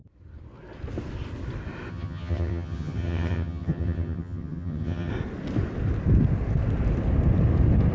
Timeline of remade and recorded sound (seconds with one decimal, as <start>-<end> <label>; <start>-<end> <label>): 0.0-1.9 recorded; 1.9-5.1 remade; 5.1-7.9 recorded